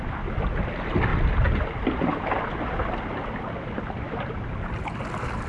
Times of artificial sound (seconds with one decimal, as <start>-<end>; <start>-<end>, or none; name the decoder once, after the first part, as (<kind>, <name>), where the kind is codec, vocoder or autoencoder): none